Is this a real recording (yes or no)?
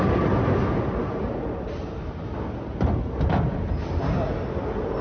yes